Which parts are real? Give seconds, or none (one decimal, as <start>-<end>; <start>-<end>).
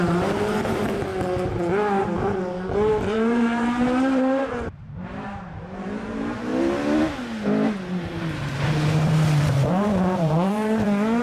1.1-2.0; 6.5-8.0